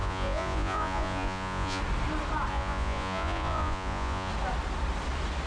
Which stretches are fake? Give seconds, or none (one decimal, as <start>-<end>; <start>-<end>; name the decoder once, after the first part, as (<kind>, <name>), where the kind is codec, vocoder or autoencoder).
0.0-1.8 (vocoder, Vocos); 2.5-4.3